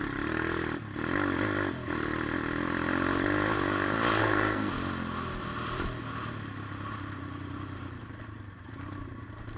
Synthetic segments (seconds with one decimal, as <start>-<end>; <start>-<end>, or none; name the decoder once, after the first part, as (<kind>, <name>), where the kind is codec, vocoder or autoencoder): 4.2-4.7 (codec, SNAC)